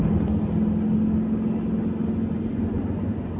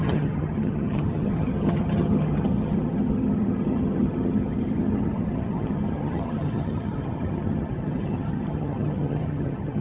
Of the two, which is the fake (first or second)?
second